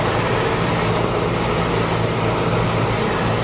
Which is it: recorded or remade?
recorded